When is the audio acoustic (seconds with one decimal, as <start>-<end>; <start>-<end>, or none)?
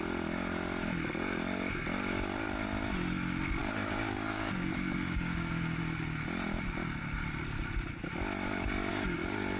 0.0-3.6; 5.8-8.9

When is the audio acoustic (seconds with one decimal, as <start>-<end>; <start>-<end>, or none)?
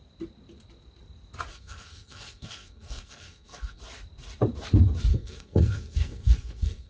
0.0-1.5; 3.8-5.1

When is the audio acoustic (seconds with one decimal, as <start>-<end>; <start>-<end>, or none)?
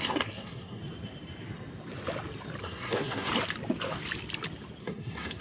0.8-2.6; 3.3-4.8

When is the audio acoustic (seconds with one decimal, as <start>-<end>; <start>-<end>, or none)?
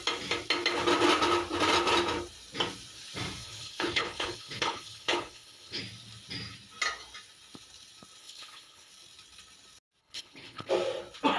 0.0-3.4; 5.8-8.2; 8.9-10.0; 10.7-11.4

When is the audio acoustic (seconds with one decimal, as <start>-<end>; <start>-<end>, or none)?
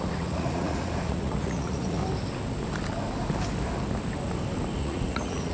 2.0-4.8